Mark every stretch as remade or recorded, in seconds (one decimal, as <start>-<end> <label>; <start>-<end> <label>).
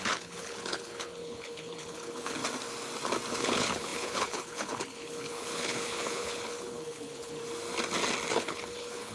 0.0-2.4 remade; 2.4-3.3 recorded; 3.3-7.4 remade; 7.4-8.3 recorded; 8.3-9.1 remade